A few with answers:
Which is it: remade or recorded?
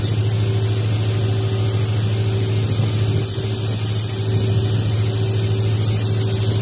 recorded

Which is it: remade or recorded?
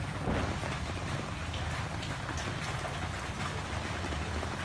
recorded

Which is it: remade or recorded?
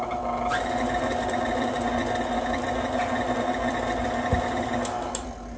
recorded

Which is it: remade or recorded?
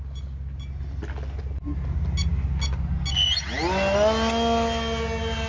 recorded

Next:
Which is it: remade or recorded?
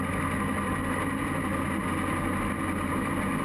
recorded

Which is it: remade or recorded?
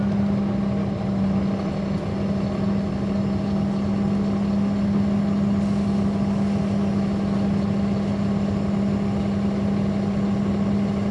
recorded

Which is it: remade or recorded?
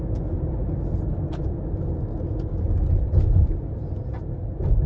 recorded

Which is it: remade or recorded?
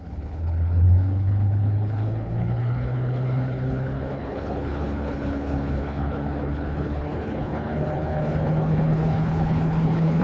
remade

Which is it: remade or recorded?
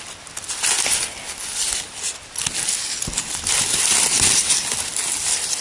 recorded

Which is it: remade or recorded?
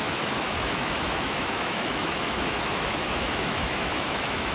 remade